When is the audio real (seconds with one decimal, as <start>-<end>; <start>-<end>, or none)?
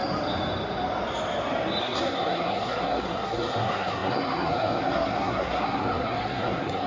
0.0-1.8